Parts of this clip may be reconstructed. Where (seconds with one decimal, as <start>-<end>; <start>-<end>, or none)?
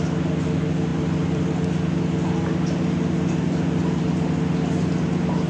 0.9-1.5